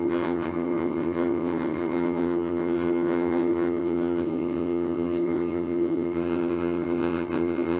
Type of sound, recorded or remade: remade